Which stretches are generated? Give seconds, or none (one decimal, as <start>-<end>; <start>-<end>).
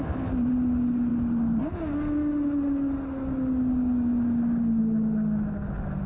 none